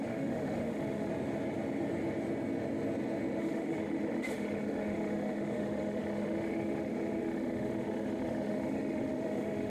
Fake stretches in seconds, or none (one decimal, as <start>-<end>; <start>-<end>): 0.0-1.1; 3.4-9.7